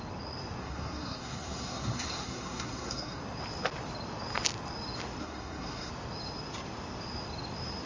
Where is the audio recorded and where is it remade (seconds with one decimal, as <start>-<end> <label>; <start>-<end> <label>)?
0.0-0.6 recorded; 0.6-3.2 remade; 3.2-5.2 recorded; 5.2-5.9 remade; 5.9-7.9 recorded